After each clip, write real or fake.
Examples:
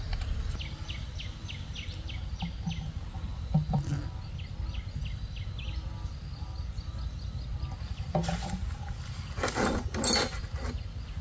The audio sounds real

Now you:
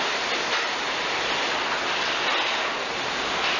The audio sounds real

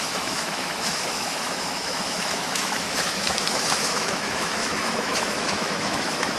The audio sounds fake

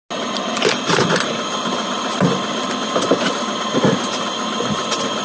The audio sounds real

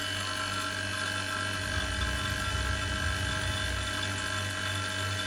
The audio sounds real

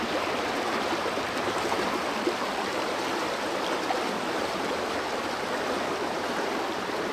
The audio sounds fake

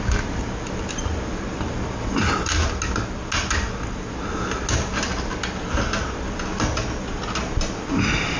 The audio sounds real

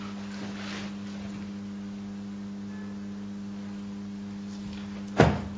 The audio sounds real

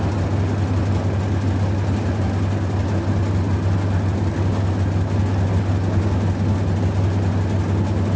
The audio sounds real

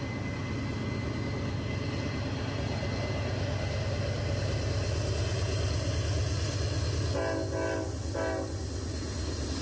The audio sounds real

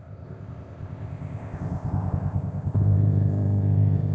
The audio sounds fake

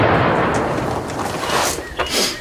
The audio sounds real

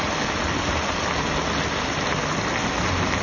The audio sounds real